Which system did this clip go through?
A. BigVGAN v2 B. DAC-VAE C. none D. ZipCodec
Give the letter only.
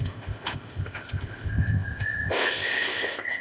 D